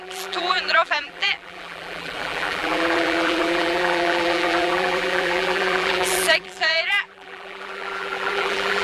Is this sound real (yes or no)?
no